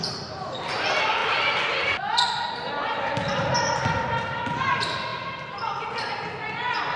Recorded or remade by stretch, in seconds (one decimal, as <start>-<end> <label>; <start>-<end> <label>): 0.0-1.2 recorded; 1.2-2.7 remade; 2.7-5.1 recorded; 5.1-6.1 remade; 6.1-7.0 recorded